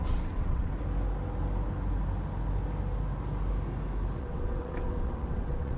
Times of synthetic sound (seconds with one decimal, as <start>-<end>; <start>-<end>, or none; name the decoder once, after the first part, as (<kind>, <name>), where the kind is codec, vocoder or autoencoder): 0.0-0.7 (vocoder, WaveNeXt); 4.2-5.8